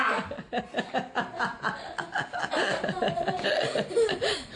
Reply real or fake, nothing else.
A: real